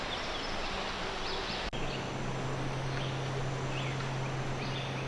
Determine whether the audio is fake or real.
real